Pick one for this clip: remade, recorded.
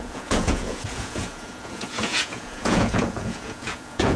remade